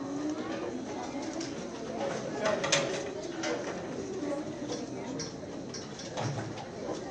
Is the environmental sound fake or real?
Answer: real